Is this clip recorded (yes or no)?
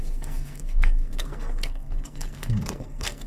no